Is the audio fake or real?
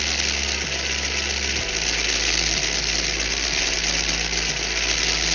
real